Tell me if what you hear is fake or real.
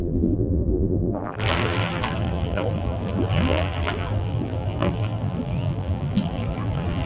fake